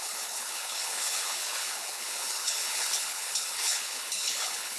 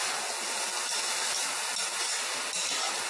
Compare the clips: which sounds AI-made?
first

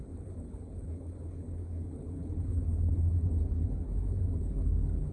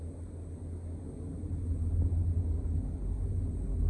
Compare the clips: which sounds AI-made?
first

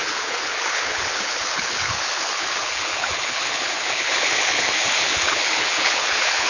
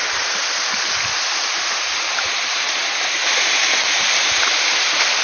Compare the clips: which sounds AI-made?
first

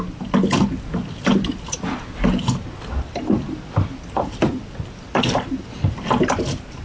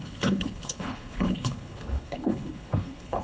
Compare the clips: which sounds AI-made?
second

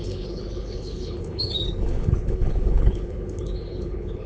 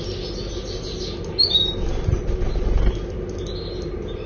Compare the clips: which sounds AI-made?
first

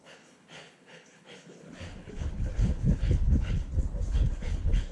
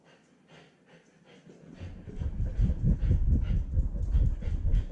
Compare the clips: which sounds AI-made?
first